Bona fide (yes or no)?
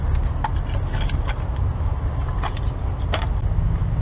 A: yes